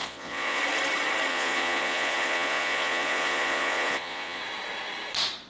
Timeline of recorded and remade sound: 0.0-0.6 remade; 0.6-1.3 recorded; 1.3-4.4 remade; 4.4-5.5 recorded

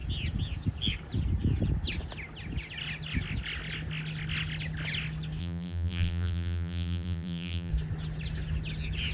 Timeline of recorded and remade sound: 0.0-5.4 recorded; 5.4-7.7 remade; 7.7-9.1 recorded

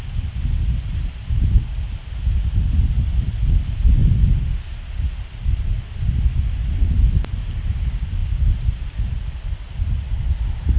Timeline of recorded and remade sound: 0.0-10.8 recorded

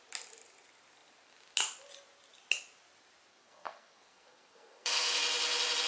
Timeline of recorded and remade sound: 0.0-3.3 recorded; 3.3-5.2 remade; 5.2-5.9 recorded

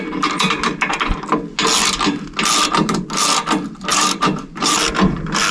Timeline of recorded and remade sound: 0.0-3.9 recorded; 3.9-4.7 remade; 4.7-5.5 recorded